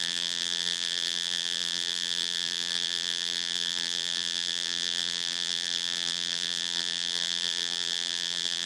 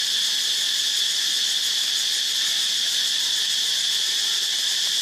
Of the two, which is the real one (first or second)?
second